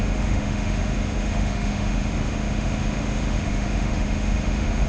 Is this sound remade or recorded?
remade